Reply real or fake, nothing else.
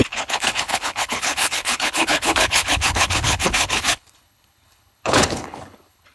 fake